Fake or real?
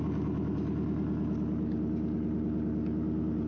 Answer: real